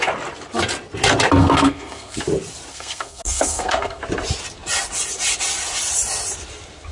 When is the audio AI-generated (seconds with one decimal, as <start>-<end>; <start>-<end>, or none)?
1.4-2.2; 2.7-4.0

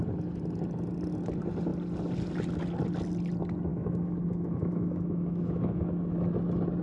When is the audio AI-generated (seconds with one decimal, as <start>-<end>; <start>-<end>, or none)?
3.7-5.8

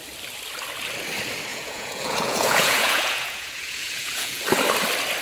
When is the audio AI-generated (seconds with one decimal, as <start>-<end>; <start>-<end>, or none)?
1.5-4.4

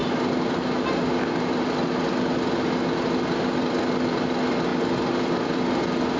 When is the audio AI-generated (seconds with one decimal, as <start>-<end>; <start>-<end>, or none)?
none